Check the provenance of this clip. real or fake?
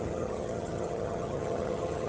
fake